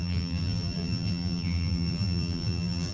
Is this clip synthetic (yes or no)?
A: yes